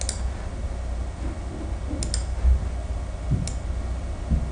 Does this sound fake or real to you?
real